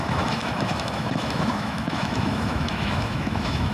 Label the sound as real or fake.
fake